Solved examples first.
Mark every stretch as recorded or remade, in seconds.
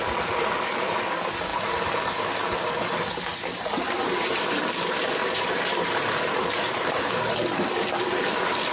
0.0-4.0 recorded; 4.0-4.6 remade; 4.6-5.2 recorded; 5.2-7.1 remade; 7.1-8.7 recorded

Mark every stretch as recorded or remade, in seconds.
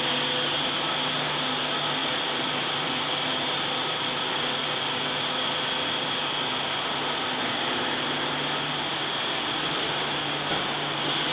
0.0-2.0 recorded; 2.0-5.2 remade; 5.2-11.3 recorded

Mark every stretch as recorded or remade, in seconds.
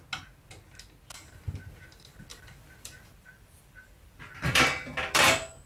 0.0-2.3 recorded; 2.3-5.2 remade; 5.2-5.7 recorded